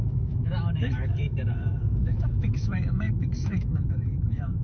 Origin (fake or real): fake